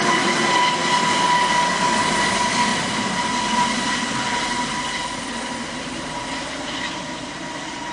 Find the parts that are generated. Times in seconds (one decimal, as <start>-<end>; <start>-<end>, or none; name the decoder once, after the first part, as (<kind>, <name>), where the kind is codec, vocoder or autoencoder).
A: 2.7-5.3 (vocoder, BigVGAN v2)